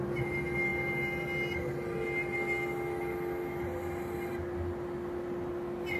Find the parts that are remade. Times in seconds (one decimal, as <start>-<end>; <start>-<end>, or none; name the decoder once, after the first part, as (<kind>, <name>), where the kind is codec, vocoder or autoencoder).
none